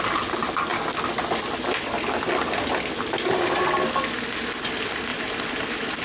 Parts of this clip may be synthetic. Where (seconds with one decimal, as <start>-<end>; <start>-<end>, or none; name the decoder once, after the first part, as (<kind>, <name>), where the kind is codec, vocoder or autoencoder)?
5.1-6.0 (vocoder, BigVGAN v2)